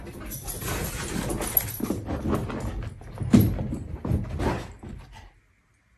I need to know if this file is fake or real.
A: real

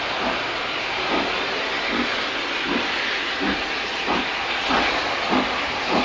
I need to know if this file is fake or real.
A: real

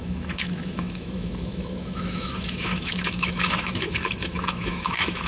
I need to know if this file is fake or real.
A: fake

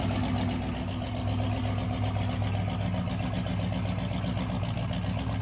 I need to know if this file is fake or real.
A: real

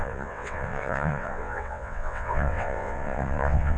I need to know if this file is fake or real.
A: fake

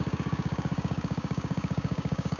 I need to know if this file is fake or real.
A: fake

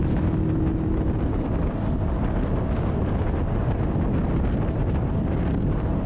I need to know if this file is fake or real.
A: real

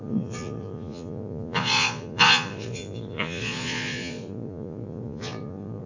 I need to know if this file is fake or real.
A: fake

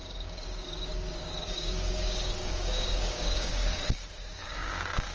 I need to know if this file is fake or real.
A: fake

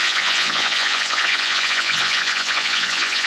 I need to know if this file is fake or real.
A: fake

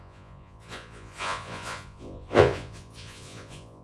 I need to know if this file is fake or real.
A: fake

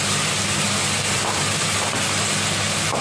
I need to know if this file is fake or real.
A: real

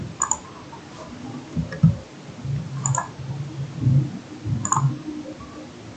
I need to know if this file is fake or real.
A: real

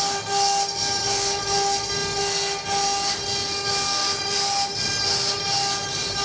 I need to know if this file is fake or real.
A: real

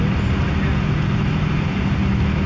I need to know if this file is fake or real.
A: real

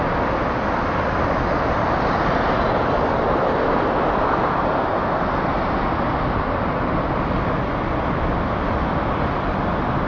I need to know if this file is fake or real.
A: real